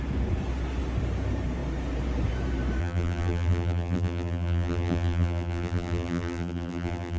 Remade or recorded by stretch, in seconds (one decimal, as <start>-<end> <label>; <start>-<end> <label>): 0.0-2.8 recorded; 2.8-7.2 remade